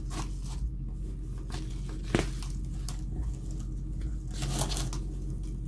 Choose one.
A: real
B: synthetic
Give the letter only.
A